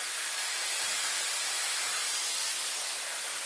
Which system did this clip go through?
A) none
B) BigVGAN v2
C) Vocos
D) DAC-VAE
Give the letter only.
A